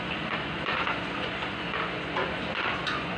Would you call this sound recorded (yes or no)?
no